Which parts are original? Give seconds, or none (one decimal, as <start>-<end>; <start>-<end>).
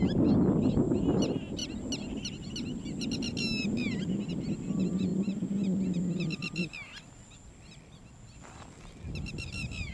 0.0-9.9